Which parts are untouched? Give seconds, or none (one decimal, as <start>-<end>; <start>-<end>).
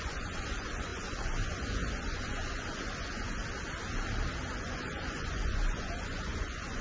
3.4-4.5